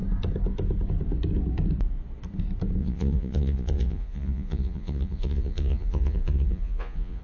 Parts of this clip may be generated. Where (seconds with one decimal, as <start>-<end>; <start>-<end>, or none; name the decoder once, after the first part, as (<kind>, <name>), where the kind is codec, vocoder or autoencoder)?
2.8-7.2 (vocoder, Vocos)